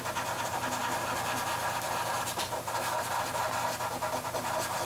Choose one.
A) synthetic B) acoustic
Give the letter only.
B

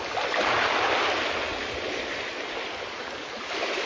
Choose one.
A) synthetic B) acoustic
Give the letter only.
B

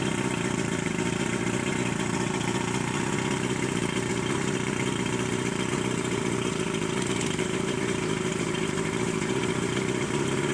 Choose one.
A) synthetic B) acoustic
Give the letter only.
A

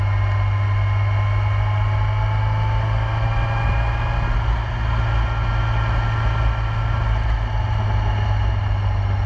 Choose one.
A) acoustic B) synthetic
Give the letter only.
A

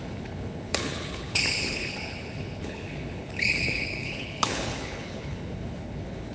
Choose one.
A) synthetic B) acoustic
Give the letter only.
A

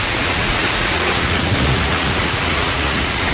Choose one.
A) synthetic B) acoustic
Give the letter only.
A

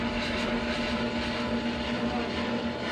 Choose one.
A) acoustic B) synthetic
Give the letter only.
A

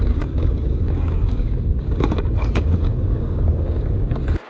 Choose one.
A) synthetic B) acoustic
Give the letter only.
A